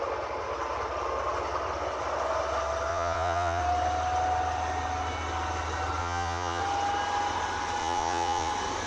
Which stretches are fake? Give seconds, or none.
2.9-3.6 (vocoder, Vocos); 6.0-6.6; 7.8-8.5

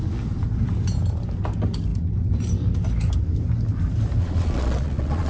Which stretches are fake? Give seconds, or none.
4.2-5.3 (vocoder, Vocos)

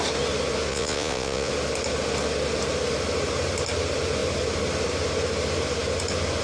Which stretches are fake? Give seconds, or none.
0.7-1.5 (vocoder, Vocos)